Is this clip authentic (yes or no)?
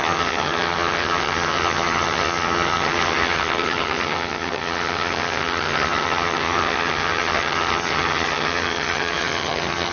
no